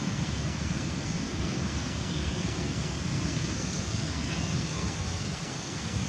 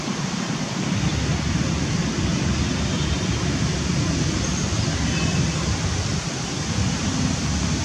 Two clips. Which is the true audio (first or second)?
second